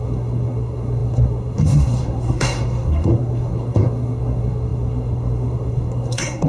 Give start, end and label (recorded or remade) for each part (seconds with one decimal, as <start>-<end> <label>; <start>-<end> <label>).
0.0-6.5 remade